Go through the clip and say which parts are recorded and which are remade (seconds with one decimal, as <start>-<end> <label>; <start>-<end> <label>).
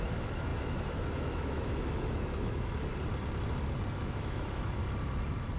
0.0-2.9 remade; 2.9-3.9 recorded; 3.9-4.8 remade; 4.8-5.6 recorded